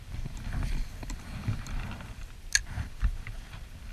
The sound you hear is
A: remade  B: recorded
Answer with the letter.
B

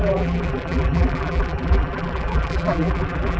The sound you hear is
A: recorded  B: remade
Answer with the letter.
B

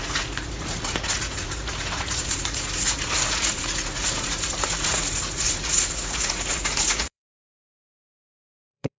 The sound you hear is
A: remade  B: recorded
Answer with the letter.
A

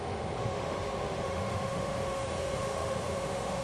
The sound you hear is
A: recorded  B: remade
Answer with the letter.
B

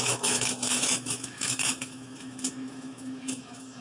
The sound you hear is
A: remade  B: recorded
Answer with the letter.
A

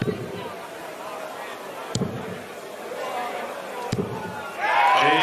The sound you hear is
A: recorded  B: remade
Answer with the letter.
B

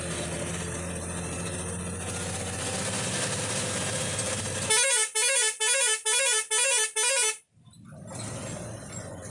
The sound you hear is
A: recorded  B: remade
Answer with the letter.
A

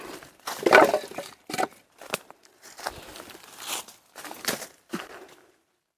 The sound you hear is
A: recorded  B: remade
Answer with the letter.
A